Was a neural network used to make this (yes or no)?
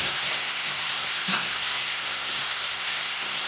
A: yes